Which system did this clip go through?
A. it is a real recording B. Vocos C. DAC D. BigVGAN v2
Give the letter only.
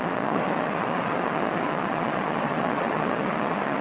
B